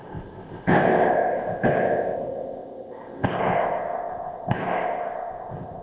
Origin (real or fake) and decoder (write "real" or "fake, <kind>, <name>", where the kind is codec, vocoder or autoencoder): fake, codec, ZipCodec